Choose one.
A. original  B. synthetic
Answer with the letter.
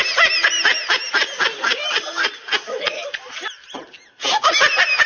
A